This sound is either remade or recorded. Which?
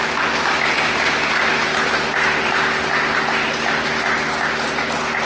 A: recorded